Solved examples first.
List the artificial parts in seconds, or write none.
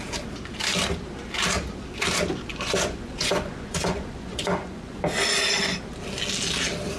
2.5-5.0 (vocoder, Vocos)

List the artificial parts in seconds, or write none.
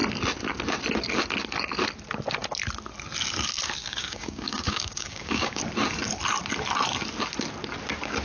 3.8-5.6 (codec, DAC)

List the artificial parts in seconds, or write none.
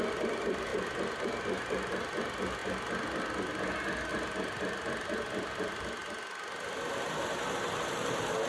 0.7-1.9 (vocoder, BigVGAN v2)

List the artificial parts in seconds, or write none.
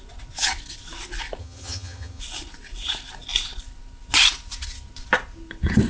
1.4-2.2 (vocoder, HiFi-GAN)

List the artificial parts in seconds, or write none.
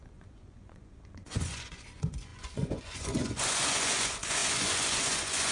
0.0-5.5 (vocoder, Vocos)